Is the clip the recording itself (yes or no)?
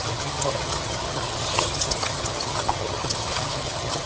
no